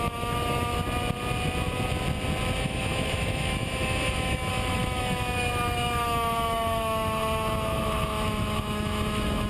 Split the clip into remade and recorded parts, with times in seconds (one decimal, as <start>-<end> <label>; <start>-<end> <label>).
0.0-0.7 remade; 0.7-2.6 recorded; 2.6-9.5 remade